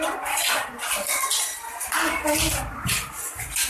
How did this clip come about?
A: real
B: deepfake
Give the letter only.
A